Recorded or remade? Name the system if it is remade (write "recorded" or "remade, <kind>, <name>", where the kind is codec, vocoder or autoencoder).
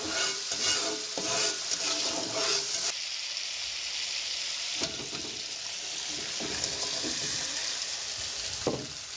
recorded